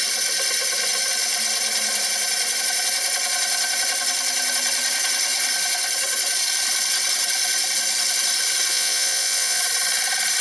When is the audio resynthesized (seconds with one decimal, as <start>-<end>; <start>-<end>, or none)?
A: 8.7-9.6